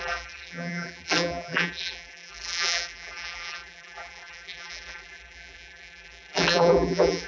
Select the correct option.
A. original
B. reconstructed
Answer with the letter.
B